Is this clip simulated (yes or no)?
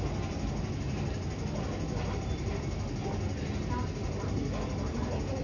no